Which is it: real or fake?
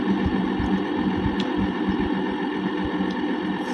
real